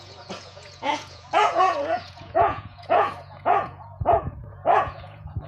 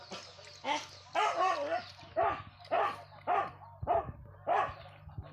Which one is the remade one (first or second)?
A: first